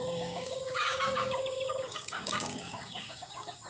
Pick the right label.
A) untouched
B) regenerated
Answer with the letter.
B